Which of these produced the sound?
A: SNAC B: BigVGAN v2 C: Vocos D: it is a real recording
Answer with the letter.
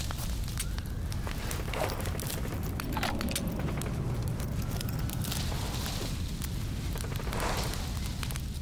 D